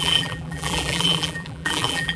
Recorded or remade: remade